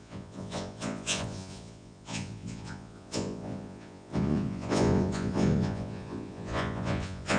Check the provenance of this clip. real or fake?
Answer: fake